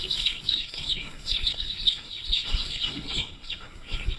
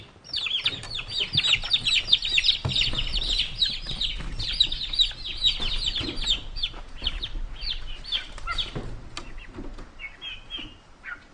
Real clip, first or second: second